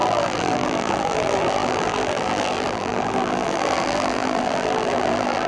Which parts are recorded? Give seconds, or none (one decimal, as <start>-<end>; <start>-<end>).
none